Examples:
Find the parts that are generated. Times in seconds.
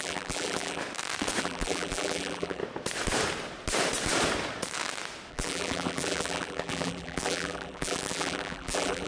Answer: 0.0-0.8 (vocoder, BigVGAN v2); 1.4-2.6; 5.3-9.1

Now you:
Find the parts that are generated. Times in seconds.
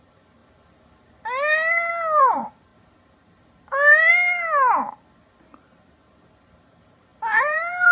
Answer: 0.0-0.4 (vocoder, BigVGAN v2); 2.2-2.7; 6.5-7.9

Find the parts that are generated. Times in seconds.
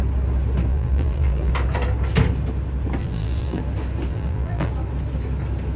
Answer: 0.7-1.5 (vocoder, BigVGAN v2); 3.0-3.6; 4.1-4.7